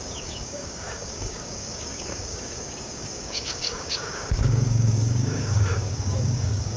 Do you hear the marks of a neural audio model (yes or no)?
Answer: yes